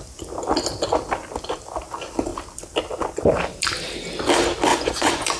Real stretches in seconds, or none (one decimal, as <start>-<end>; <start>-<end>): 0.0-4.7

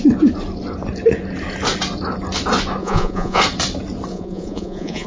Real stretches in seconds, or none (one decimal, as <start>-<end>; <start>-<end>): 0.0-2.8; 3.4-4.1

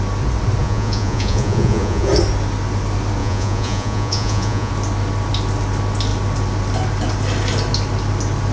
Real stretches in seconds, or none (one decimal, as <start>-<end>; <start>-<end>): 0.0-0.6; 2.1-3.2; 4.7-8.5

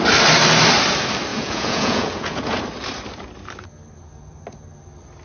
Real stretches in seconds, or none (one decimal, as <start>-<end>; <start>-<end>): 0.0-1.3; 2.6-5.2

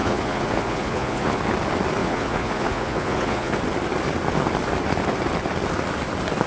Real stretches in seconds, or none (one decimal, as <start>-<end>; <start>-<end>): 1.4-2.0; 3.5-6.5

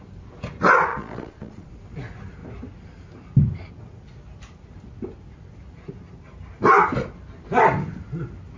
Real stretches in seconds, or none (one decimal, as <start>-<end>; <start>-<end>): 0.0-0.9; 1.7-8.6

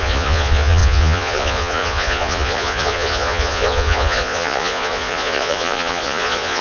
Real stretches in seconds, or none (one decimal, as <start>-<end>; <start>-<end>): none